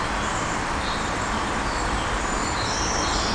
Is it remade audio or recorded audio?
recorded